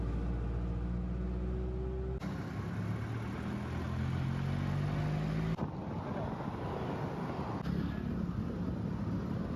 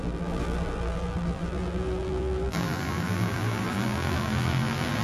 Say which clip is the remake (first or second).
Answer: second